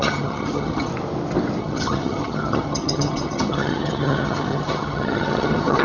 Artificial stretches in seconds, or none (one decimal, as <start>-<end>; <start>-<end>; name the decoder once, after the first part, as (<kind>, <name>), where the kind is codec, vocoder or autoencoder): 0.0-0.9 (vocoder, HiFi-GAN); 1.6-5.8